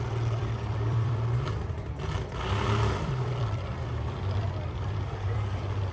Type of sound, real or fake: fake